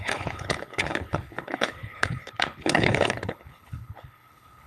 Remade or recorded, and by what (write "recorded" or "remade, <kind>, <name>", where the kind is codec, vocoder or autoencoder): remade, codec, HILCodec